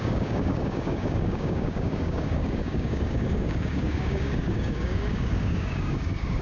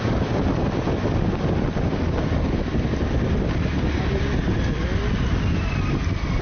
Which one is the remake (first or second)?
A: first